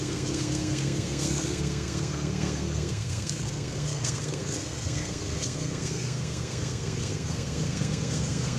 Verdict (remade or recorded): remade